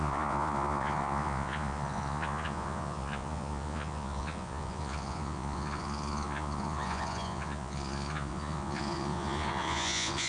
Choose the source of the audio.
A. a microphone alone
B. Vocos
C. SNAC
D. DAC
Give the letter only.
B